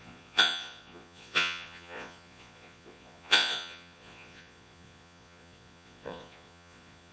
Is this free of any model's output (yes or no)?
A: no